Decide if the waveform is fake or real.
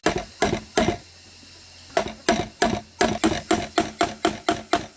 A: real